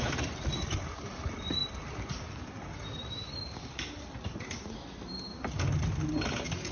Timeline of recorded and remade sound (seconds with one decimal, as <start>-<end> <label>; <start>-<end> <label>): 0.0-6.7 recorded